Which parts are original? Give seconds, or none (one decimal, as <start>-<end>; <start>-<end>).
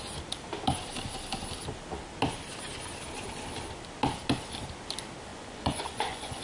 0.0-5.3